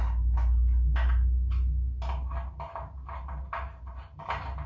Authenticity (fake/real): real